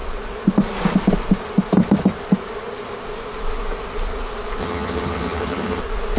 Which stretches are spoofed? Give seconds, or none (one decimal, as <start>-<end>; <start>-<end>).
4.6-5.8

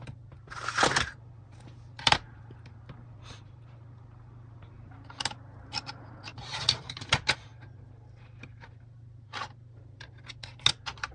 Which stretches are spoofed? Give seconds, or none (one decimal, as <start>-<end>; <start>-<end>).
6.3-7.1

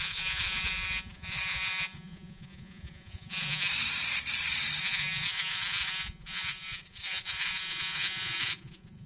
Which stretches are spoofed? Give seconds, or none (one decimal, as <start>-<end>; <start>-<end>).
0.0-3.7; 4.8-9.1